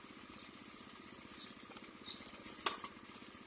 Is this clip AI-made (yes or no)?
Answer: no